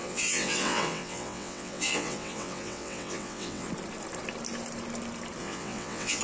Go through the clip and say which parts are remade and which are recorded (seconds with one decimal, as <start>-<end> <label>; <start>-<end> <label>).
0.0-3.7 remade; 3.7-5.4 recorded; 5.4-6.2 remade